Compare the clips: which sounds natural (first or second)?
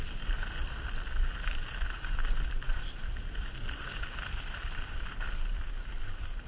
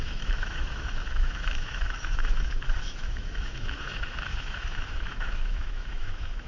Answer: first